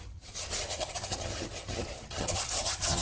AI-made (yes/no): yes